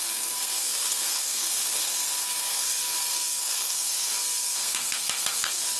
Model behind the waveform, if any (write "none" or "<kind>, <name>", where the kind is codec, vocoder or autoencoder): codec, SNAC